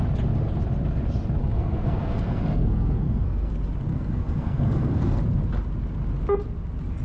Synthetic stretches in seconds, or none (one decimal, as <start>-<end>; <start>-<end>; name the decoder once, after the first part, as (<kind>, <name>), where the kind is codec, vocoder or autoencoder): 1.4-3.5 (codec, SNAC); 3.9-5.2